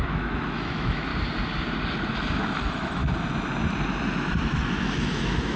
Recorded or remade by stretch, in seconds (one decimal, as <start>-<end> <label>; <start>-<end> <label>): 0.0-1.1 remade; 1.1-2.6 recorded; 2.6-3.0 remade; 3.0-4.3 recorded; 4.3-5.6 remade